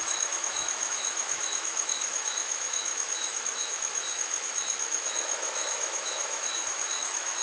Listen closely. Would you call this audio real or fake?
fake